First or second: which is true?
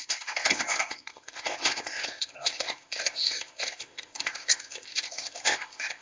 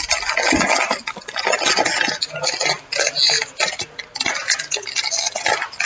second